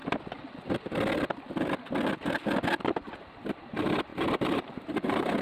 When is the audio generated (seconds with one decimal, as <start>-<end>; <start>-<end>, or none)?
3.2-5.4